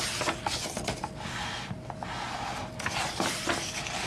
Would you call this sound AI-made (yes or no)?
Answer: no